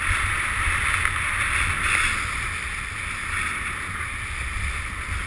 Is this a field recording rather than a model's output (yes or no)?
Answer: yes